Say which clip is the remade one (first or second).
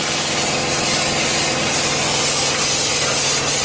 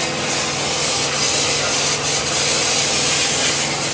first